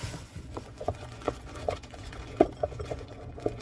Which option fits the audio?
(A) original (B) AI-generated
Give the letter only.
B